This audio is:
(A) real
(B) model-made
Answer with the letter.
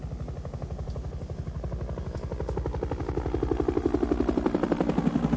A